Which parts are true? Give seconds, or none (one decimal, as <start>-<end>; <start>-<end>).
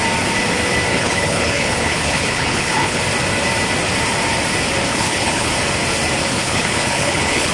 0.0-0.9; 3.0-4.9; 5.5-6.2